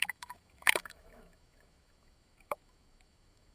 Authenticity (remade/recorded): remade